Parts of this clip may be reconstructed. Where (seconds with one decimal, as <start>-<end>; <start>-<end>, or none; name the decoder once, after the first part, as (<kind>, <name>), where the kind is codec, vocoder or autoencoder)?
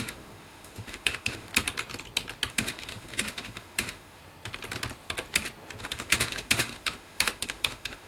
0.0-1.5 (autoencoder, DAC-VAE); 2.5-4.2; 5.8-8.1